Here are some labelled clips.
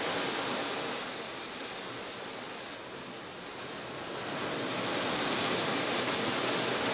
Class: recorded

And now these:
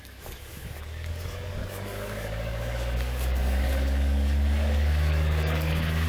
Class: remade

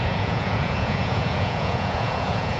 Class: remade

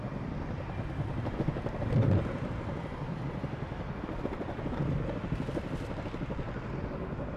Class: recorded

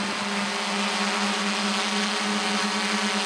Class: recorded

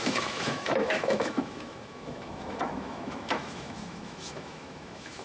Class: remade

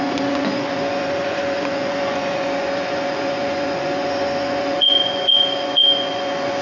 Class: remade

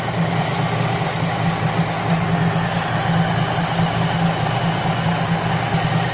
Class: recorded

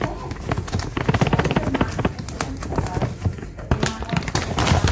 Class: recorded